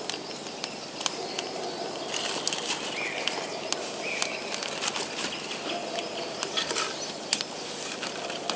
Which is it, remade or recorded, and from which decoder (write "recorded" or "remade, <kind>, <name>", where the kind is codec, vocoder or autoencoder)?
recorded